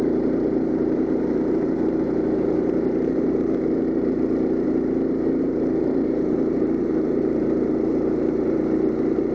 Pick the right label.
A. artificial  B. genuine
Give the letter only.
A